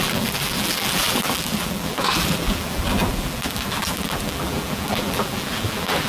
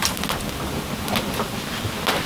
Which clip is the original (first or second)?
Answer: second